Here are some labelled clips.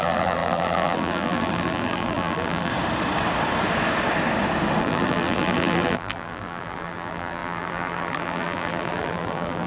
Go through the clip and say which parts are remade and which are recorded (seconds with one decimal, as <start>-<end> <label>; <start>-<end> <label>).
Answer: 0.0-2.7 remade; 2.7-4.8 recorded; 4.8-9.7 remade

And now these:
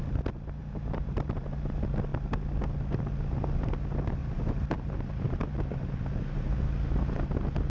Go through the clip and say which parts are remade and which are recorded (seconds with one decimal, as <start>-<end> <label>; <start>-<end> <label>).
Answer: 0.0-0.6 recorded; 0.6-1.4 remade; 1.4-4.2 recorded; 4.2-6.6 remade; 6.6-7.7 recorded

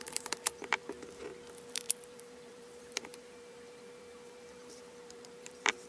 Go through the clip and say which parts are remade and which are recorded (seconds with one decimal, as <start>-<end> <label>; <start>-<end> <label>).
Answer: 0.0-0.8 remade; 0.8-1.7 recorded; 1.7-5.9 remade

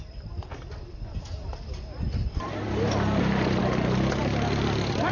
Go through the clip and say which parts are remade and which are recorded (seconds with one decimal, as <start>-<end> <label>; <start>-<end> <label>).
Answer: 0.0-4.2 recorded; 4.2-5.1 remade

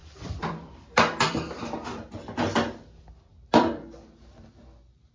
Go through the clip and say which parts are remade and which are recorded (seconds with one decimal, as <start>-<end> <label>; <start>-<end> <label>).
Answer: 0.0-2.1 remade; 2.1-3.3 recorded; 3.3-4.1 remade; 4.1-5.1 recorded

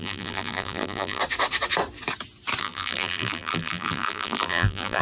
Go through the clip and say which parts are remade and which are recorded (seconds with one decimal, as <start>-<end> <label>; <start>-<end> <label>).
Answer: 0.0-1.2 remade; 1.2-2.6 recorded; 2.6-5.0 remade

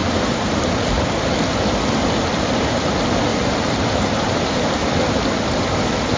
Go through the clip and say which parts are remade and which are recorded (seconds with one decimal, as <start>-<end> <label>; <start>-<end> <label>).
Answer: 0.0-0.7 remade; 0.7-3.3 recorded; 3.3-4.7 remade; 4.7-6.2 recorded